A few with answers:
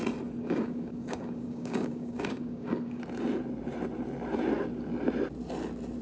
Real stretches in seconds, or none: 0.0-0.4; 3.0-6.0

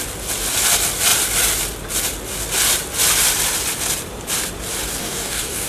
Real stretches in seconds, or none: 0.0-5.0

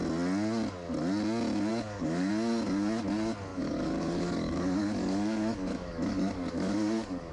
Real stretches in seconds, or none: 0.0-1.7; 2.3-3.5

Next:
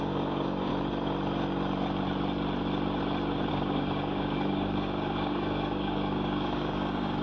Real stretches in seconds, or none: 0.7-3.5